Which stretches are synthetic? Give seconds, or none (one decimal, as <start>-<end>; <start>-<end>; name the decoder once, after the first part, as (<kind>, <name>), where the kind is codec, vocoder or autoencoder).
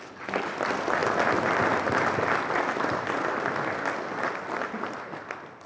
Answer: none